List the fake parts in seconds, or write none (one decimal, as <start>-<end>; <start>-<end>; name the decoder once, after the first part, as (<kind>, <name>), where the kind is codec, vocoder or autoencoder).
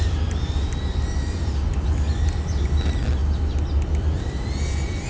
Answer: none